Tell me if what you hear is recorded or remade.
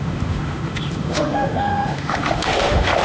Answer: remade